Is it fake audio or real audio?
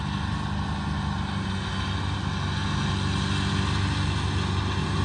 real